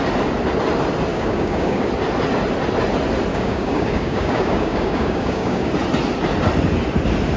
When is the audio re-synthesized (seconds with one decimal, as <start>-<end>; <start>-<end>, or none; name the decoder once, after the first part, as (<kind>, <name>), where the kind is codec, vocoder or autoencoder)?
1.1-1.9 (codec, DAC); 3.3-5.7